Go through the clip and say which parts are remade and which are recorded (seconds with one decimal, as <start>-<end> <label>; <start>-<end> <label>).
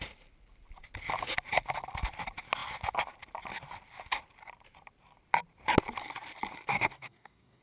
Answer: 0.0-6.7 recorded; 6.7-7.6 remade